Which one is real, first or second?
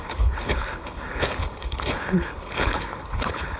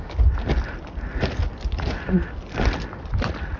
second